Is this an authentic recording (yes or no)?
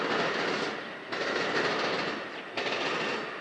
yes